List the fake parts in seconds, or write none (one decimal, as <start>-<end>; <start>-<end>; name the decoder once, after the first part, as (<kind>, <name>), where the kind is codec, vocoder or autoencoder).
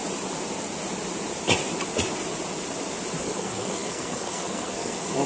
3.2-5.3 (codec, SNAC)